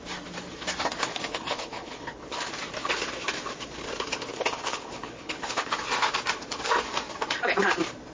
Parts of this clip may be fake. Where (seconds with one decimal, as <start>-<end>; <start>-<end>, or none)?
1.1-2.5; 4.3-5.7

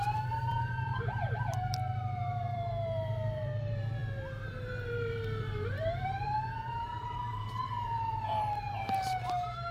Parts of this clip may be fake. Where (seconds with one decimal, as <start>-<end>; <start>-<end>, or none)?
0.0-9.7

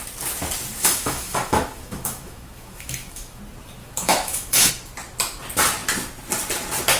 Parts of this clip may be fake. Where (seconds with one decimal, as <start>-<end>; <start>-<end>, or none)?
0.8-3.4; 3.8-4.7

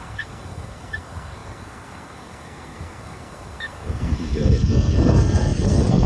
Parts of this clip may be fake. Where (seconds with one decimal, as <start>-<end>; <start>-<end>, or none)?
0.0-6.1

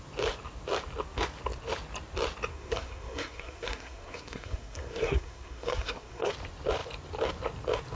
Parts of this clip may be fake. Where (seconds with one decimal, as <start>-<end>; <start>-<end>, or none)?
2.5-6.3

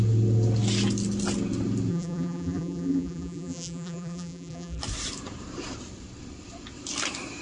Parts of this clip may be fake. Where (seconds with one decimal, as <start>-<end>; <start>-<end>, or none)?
1.9-4.8

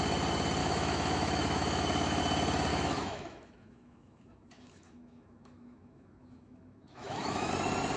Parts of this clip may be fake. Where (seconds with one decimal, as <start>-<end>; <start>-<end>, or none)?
0.6-2.2; 2.7-7.5